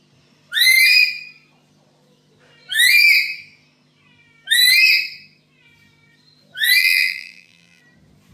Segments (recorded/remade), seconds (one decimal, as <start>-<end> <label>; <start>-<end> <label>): 0.0-6.8 recorded; 6.8-7.8 remade; 7.8-8.3 recorded